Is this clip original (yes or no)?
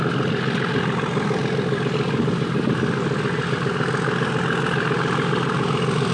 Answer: yes